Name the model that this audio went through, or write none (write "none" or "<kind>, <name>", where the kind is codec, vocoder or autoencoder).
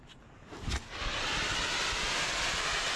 none